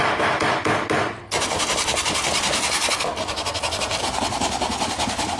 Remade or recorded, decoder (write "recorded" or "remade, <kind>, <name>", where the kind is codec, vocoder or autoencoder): recorded